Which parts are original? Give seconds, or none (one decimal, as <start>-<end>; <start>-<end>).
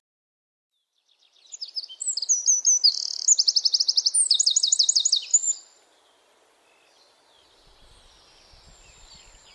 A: 0.0-9.5